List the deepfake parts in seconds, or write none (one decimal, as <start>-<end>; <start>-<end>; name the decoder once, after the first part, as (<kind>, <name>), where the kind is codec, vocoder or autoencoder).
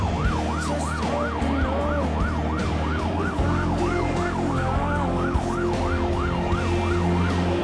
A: 2.6-7.6 (codec, DAC)